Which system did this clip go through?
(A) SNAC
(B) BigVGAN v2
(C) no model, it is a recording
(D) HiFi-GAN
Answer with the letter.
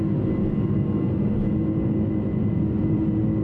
C